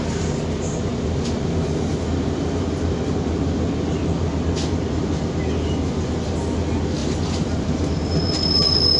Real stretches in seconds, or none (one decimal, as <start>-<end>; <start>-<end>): 0.0-0.9; 6.1-7.0